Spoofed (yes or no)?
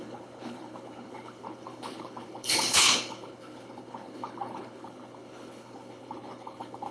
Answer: yes